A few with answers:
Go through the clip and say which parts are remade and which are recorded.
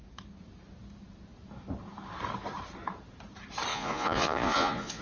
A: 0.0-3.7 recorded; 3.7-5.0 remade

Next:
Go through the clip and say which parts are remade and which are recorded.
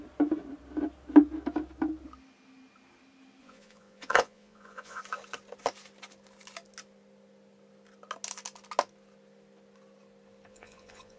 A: 0.0-3.4 recorded; 3.4-5.0 remade; 5.0-10.5 recorded; 10.5-11.2 remade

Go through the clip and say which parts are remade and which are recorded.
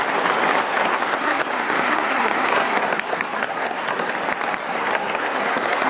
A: 0.0-0.6 recorded; 0.6-4.1 remade; 4.1-4.6 recorded; 4.6-5.9 remade